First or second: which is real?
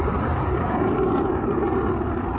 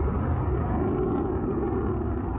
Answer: second